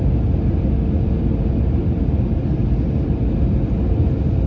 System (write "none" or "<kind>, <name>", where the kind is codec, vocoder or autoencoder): none